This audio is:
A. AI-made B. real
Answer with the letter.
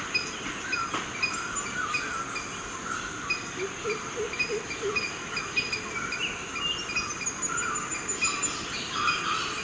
B